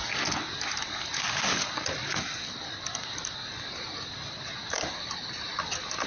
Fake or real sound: real